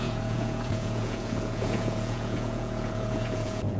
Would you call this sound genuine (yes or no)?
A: no